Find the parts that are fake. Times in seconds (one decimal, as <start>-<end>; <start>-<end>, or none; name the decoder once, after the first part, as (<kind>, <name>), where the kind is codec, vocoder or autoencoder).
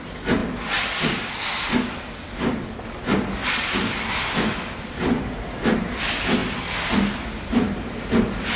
none